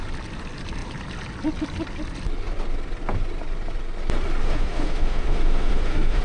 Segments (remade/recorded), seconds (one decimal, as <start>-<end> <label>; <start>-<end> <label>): 0.0-4.4 recorded; 4.4-6.2 remade